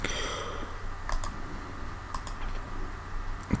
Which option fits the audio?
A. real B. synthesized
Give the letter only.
A